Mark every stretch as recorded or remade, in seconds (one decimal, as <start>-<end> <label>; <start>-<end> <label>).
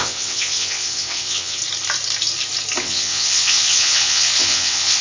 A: 0.0-1.6 remade; 1.6-2.8 recorded; 2.8-5.0 remade